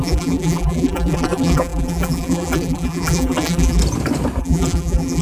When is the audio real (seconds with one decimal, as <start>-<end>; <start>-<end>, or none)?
3.8-4.4